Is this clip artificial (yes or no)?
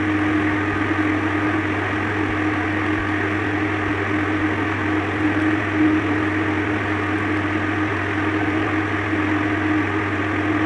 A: no